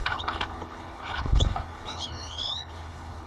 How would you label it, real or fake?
fake